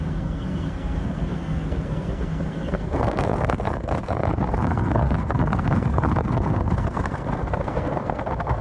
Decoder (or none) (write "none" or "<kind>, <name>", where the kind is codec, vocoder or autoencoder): codec, SNAC